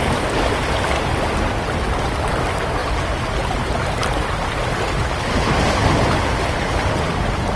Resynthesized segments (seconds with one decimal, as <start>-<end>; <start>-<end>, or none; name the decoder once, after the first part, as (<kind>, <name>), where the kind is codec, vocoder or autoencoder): none